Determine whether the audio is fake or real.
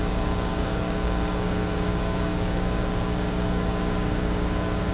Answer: fake